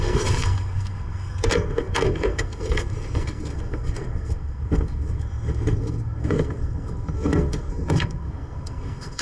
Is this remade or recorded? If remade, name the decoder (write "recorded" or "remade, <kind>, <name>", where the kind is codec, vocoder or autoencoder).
remade, codec, SNAC